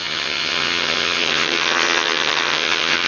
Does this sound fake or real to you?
fake